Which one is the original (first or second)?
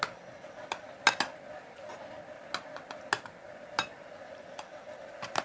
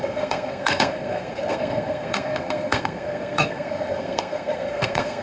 first